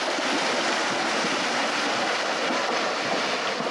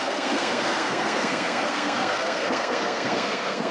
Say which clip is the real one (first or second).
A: first